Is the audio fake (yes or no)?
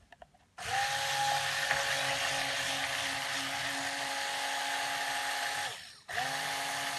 no